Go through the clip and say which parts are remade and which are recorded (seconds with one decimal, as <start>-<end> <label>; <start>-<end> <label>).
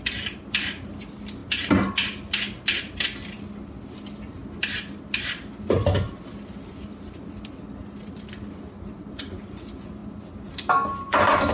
0.0-11.5 recorded